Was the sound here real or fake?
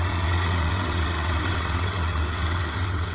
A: fake